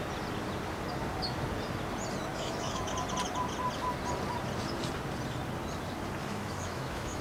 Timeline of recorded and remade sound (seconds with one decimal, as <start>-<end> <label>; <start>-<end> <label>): 0.0-2.3 recorded; 2.3-2.9 remade; 2.9-6.2 recorded; 6.2-7.2 remade